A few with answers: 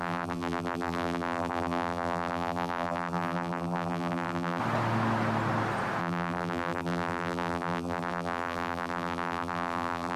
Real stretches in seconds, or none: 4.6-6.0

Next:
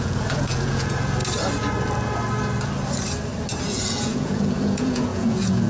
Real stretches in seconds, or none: 1.2-3.6

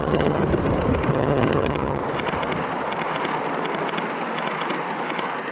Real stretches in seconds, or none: 0.4-1.1; 2.0-5.5